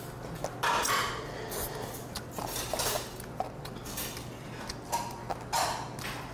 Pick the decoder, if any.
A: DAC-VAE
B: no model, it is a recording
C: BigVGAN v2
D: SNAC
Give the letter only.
B